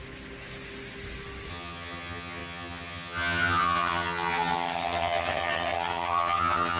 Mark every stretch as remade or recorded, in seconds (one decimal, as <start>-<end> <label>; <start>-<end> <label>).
0.0-1.5 recorded; 1.5-6.8 remade